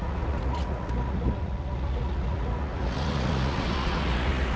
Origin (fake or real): fake